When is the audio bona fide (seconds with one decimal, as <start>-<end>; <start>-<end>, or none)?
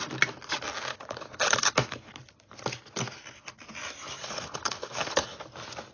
0.0-0.9; 1.7-4.2; 5.4-5.9